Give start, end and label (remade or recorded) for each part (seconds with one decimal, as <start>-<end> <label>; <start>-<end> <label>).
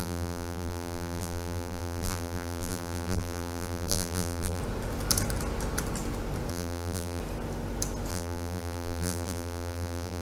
0.0-4.6 remade; 4.6-6.5 recorded; 6.5-7.2 remade; 7.2-8.1 recorded; 8.1-10.2 remade